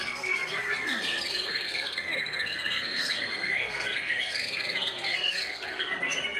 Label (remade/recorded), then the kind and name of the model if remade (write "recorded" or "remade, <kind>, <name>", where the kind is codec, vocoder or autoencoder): remade, codec, SNAC